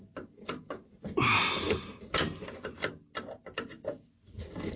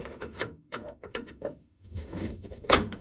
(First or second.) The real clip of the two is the first